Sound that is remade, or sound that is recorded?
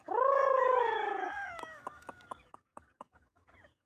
remade